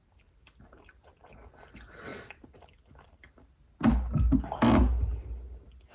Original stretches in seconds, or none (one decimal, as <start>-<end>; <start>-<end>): 0.0-5.9